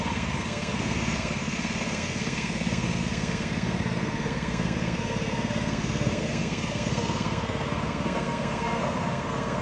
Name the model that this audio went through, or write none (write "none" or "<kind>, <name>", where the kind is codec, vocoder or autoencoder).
codec, SNAC